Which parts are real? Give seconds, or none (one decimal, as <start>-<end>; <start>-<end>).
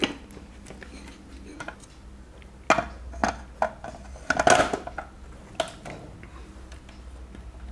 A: 0.0-7.7